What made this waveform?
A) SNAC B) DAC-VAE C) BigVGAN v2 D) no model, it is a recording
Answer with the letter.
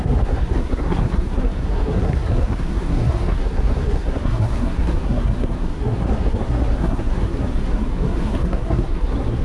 A